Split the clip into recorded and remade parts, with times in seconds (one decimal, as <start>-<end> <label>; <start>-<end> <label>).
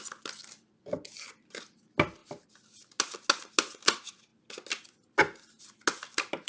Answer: 0.0-6.5 recorded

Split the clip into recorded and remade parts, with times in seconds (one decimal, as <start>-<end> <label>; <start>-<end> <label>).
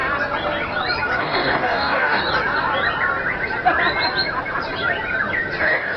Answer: 0.0-1.2 recorded; 1.2-2.2 remade; 2.2-5.6 recorded; 5.6-6.0 remade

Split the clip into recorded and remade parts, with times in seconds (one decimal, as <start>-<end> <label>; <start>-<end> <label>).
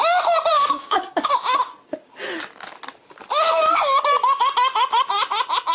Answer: 0.0-0.5 recorded; 0.5-1.3 remade; 1.3-3.5 recorded; 3.5-4.0 remade; 4.0-5.7 recorded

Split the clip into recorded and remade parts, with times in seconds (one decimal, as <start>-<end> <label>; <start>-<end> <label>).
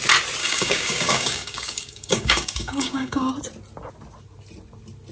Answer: 0.0-0.4 recorded; 0.4-3.3 remade; 3.3-5.1 recorded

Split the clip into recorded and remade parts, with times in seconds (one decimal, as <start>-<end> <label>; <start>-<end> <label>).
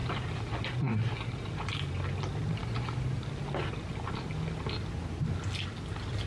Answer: 0.0-6.3 recorded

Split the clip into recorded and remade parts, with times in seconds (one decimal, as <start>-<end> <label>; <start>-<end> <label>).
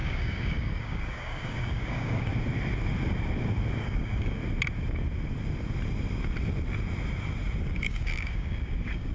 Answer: 0.0-2.3 remade; 2.3-3.8 recorded; 3.8-4.4 remade; 4.4-7.6 recorded; 7.6-9.1 remade